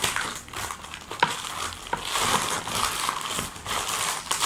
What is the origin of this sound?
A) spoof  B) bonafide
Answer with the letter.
B